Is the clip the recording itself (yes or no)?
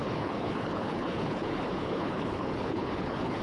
no